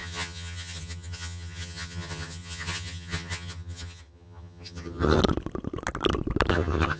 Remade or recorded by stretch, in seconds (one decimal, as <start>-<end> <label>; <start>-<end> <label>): 0.0-5.2 remade; 5.2-6.5 recorded; 6.5-7.0 remade